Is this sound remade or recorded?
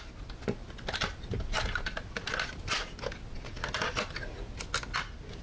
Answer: recorded